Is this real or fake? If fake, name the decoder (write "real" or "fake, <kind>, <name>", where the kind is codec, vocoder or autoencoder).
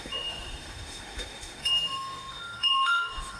fake, autoencoder, DAC-VAE